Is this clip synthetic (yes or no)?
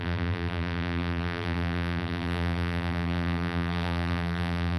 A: yes